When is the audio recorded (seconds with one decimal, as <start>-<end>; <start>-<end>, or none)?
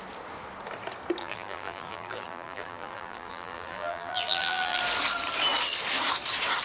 0.0-1.2; 4.8-6.6